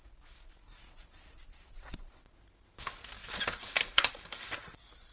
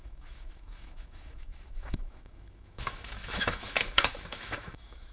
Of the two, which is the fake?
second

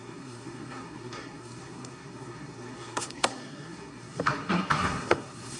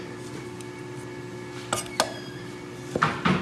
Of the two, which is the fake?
first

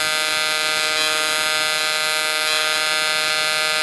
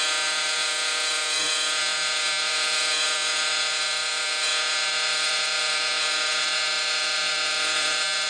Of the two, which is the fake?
second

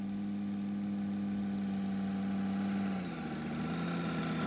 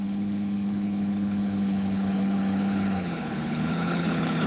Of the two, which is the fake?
second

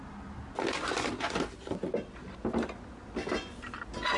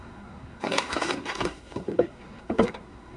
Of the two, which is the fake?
second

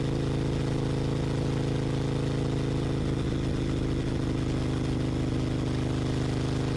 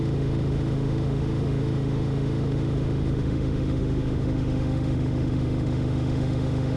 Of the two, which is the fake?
second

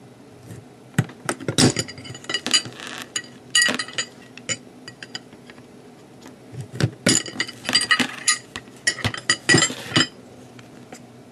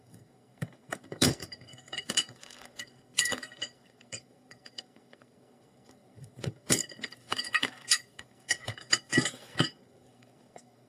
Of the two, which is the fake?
second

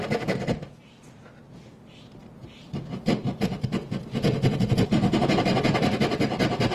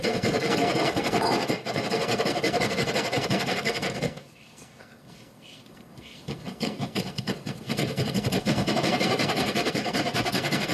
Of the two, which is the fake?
second